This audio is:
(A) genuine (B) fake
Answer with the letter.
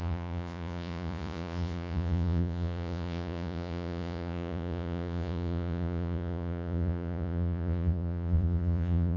B